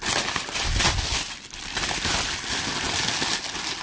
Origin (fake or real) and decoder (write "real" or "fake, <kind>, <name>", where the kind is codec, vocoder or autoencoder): real